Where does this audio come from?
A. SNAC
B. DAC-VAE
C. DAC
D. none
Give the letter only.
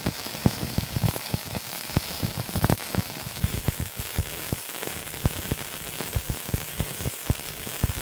C